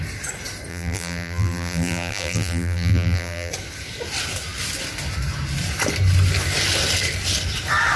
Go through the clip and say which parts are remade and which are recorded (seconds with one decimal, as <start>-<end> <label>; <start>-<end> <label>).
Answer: 0.0-0.7 recorded; 0.7-3.5 remade; 3.5-8.0 recorded